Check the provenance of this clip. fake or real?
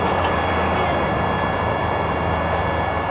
fake